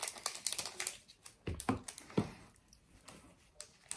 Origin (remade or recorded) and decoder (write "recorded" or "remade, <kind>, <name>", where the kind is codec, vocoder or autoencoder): recorded